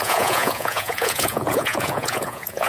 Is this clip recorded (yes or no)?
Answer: no